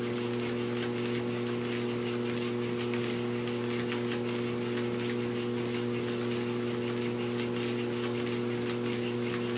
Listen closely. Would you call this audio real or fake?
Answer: real